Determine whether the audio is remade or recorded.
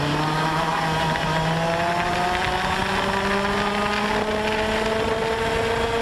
recorded